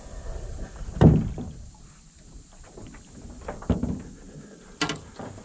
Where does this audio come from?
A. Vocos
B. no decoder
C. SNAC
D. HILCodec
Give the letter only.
B